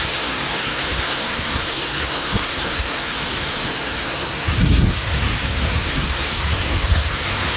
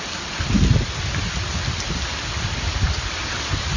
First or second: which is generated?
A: first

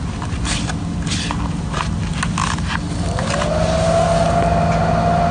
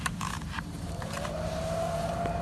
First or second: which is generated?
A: second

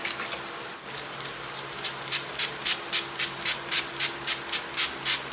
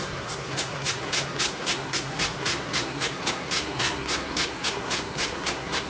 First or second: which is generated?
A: second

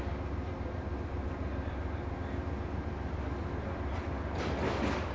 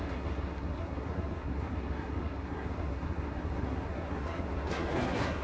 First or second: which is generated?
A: second